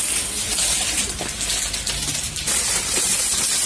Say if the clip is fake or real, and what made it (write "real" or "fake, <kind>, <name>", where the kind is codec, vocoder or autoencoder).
real